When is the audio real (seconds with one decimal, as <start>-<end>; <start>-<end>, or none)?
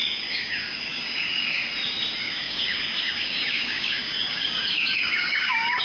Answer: 1.6-2.2